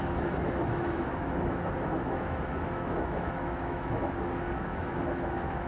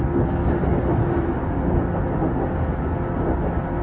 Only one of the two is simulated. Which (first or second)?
first